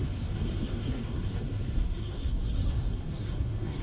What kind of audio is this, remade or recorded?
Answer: remade